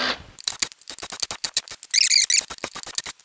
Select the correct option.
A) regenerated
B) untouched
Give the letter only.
B